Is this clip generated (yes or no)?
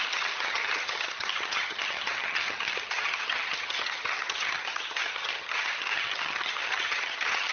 yes